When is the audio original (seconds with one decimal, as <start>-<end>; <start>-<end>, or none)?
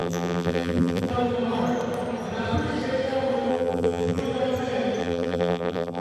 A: 1.1-3.5; 4.2-5.0